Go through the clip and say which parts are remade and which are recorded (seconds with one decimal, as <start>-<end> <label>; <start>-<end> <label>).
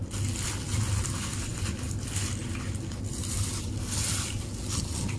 0.0-5.2 recorded